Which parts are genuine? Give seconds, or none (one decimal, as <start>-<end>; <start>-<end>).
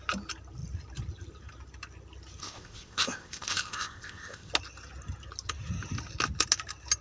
0.0-2.4; 4.5-7.0